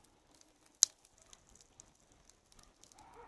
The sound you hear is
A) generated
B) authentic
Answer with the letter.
B